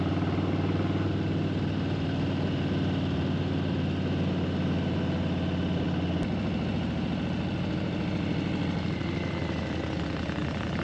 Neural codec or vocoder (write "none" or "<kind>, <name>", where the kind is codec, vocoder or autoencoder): none